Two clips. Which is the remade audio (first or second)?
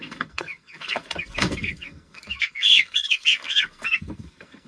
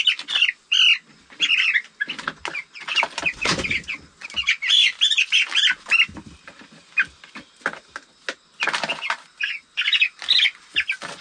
first